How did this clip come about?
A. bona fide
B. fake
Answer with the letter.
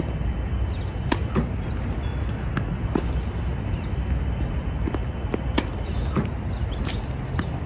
A